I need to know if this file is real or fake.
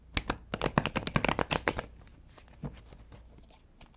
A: real